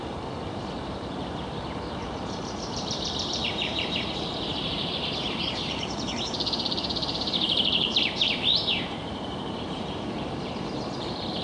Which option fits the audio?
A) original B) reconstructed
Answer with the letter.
B